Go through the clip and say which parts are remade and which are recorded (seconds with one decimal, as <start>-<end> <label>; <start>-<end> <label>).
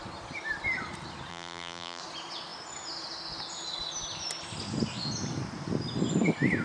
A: 0.0-1.3 recorded; 1.3-2.0 remade; 2.0-6.6 recorded